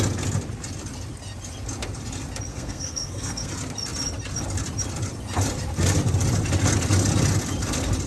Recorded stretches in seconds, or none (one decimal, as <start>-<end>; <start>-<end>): 0.0-2.5; 3.5-8.1